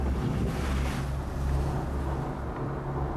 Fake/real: real